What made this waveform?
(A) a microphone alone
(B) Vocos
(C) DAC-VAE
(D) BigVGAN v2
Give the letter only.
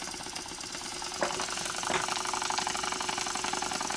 A